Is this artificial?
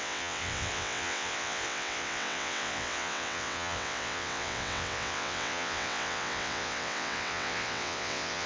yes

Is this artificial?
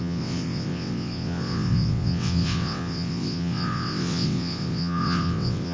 yes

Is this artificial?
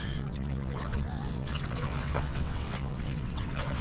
yes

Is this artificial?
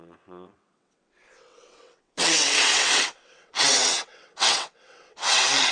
yes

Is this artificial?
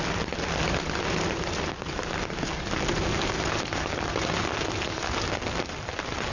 no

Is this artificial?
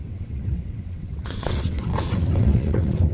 yes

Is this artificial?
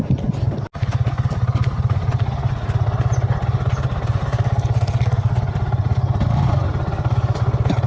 no